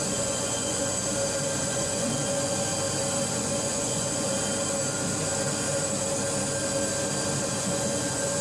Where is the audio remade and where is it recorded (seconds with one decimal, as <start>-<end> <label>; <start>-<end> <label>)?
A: 0.0-1.0 remade; 1.0-1.6 recorded; 1.6-2.7 remade; 2.7-3.3 recorded; 3.3-4.3 remade; 4.3-7.5 recorded; 7.5-8.4 remade